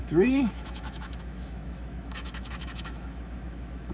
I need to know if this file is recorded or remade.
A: remade